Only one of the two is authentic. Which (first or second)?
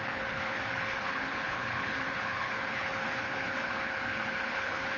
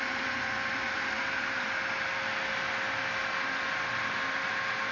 second